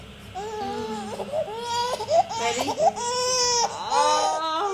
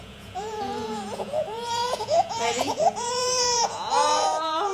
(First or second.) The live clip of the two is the first